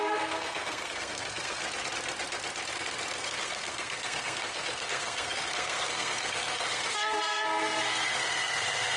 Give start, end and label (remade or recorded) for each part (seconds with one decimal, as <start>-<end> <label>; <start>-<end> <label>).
0.0-1.6 remade; 1.6-3.1 recorded; 3.1-9.0 remade